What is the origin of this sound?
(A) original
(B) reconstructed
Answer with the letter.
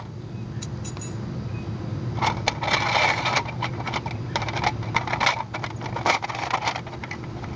A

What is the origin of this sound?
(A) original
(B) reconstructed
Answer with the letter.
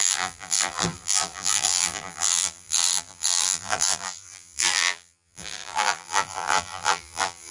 B